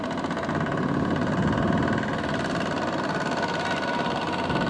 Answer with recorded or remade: recorded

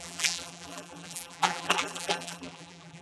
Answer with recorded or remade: remade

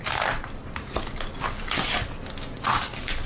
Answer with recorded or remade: recorded